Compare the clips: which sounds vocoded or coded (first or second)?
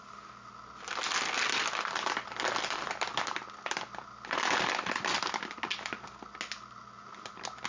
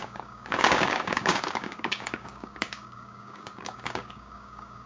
second